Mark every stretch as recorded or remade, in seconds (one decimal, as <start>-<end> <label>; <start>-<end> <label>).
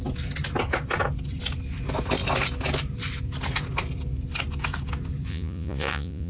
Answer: 0.0-5.3 recorded; 5.3-6.3 remade